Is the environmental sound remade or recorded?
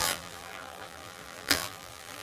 remade